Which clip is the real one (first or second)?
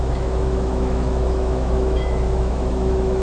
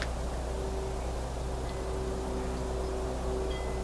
second